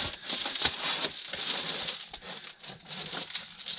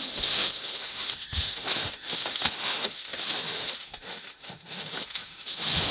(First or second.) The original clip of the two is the first